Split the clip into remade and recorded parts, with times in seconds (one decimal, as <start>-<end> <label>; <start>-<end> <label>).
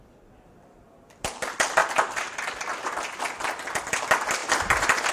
0.0-1.8 recorded; 1.8-3.2 remade; 3.2-5.1 recorded